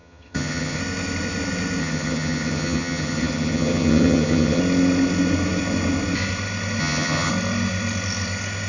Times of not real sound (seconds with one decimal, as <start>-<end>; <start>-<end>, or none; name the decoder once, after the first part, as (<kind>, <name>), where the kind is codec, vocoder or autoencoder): 0.0-0.8 (vocoder, HiFi-GAN); 1.8-4.6; 6.8-7.3